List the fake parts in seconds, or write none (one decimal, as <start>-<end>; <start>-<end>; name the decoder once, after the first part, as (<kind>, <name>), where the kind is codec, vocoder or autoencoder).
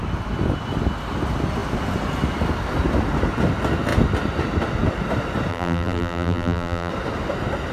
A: 5.5-6.9 (vocoder, BigVGAN v2)